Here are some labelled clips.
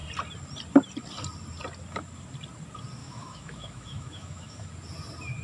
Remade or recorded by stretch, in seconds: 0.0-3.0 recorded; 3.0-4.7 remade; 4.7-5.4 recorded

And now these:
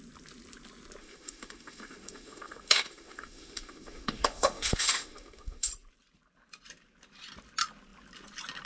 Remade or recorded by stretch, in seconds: 0.0-1.0 recorded; 1.0-5.7 remade; 5.7-8.7 recorded

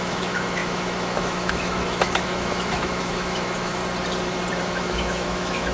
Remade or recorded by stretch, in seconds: 0.0-3.8 remade; 3.8-4.6 recorded; 4.6-5.7 remade

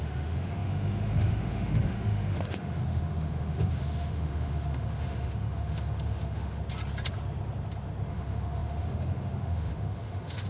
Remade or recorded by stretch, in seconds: 0.0-6.6 remade; 6.6-8.1 recorded; 8.1-10.5 remade

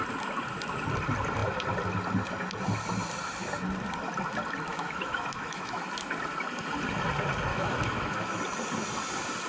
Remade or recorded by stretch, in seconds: 0.0-4.7 recorded; 4.7-5.8 remade; 5.8-7.5 recorded; 7.5-8.4 remade; 8.4-9.5 recorded